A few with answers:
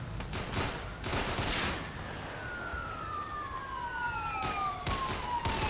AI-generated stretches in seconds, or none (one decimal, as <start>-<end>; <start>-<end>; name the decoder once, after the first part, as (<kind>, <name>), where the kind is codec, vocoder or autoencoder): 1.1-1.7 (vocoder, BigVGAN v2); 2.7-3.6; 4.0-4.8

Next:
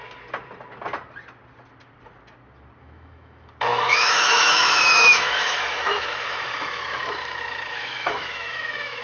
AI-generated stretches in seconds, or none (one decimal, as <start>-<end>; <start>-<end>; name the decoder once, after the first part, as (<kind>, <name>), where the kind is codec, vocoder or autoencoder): 2.8-9.0 (autoencoder, DAC-VAE)

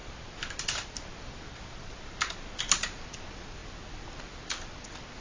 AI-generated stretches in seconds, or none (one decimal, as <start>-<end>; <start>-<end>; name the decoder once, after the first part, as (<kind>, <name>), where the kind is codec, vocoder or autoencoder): none

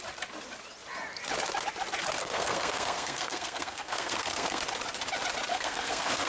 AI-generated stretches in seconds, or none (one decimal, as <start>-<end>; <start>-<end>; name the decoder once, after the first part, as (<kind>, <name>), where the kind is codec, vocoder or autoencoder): 2.2-4.6 (codec, SNAC); 5.5-6.3

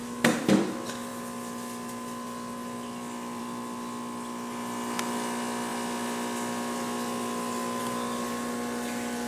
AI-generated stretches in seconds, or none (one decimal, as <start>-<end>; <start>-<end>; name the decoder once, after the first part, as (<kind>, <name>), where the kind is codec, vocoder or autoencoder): none

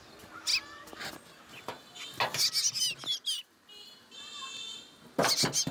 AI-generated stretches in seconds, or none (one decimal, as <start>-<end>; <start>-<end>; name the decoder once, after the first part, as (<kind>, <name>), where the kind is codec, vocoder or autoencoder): none